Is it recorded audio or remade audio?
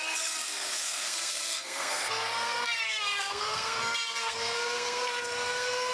remade